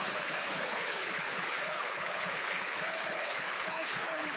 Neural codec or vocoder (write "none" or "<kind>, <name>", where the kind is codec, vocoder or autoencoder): codec, HILCodec